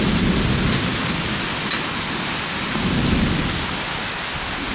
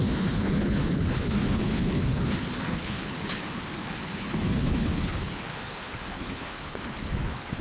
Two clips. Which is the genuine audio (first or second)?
first